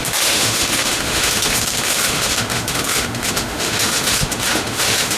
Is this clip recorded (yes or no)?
no